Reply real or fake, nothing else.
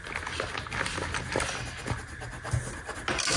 real